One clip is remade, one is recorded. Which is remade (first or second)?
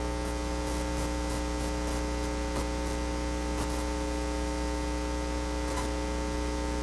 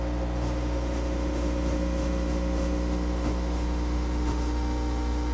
second